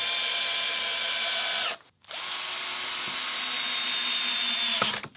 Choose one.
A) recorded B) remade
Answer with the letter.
A